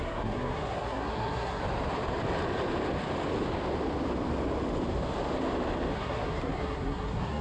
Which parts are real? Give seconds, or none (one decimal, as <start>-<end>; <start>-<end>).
1.6-5.9